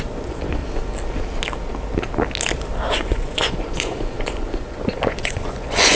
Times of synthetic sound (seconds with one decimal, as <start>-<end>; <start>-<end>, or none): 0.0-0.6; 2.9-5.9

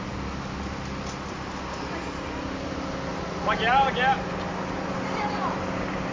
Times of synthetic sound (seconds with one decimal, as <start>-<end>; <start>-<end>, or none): none

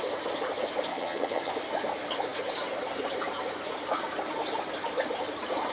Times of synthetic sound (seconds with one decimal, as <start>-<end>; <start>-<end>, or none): 0.9-1.5

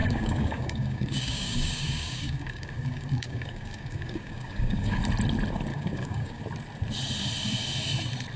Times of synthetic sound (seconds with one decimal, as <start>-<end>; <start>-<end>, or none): 0.0-5.0; 5.7-6.4

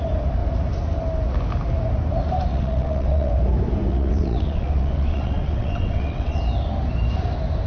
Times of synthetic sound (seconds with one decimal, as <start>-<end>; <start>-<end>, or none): 2.5-3.3; 3.9-6.4